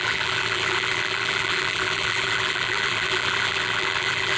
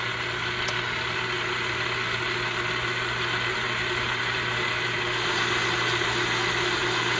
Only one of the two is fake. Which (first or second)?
first